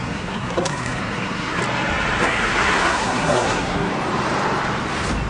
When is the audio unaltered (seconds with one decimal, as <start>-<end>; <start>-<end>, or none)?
1.6-2.2; 3.9-5.3